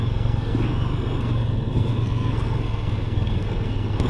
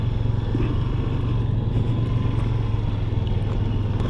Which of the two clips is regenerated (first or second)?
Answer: first